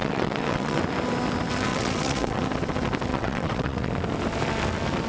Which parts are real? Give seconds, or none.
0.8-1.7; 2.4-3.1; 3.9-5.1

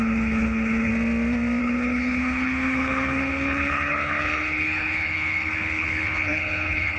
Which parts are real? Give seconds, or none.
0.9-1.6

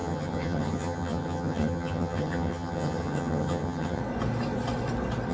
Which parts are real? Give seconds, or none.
4.0-5.3

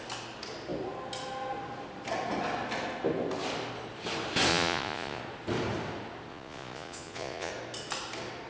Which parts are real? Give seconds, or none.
0.0-4.5; 5.2-6.3; 7.5-8.5

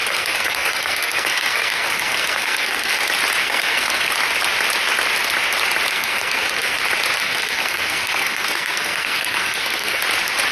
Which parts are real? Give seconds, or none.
3.0-3.4; 4.1-5.9; 6.8-7.2; 10.0-10.5

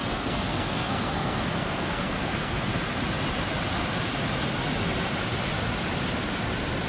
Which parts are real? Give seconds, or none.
2.7-6.9

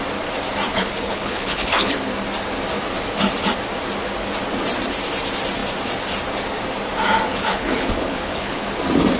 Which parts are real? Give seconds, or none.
0.0-0.7; 2.0-7.3; 8.6-9.2

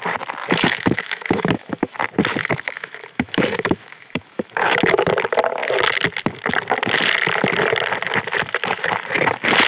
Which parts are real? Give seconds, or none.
0.0-0.4; 2.0-2.4; 5.1-9.7